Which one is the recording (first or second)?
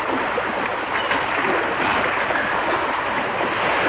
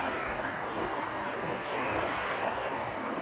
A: first